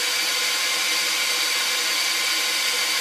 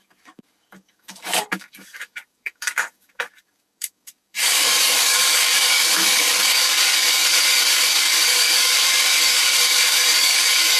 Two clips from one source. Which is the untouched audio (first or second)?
first